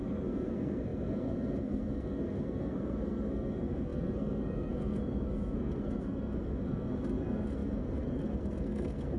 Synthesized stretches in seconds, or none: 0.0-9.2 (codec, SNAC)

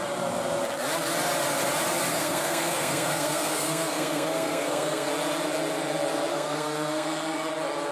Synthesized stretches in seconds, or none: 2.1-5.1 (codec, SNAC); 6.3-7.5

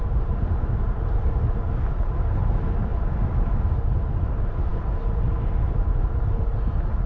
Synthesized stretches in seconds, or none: none

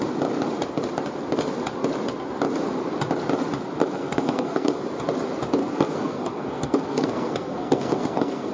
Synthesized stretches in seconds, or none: 3.8-4.8 (codec, SNAC); 5.6-8.5